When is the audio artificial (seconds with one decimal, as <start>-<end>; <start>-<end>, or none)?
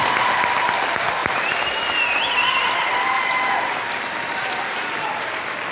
1.2-4.6